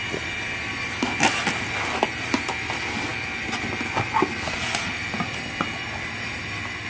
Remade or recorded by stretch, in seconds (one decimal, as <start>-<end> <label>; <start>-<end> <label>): 0.0-6.9 recorded